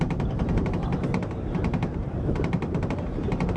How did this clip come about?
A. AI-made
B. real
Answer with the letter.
A